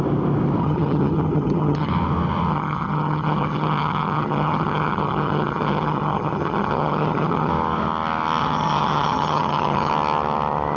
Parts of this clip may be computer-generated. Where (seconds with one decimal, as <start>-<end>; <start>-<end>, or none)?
0.6-1.9; 2.5-7.5; 8.4-9.9

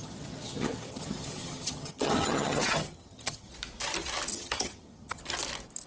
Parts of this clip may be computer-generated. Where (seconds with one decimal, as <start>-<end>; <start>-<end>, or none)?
0.0-3.5; 4.3-5.2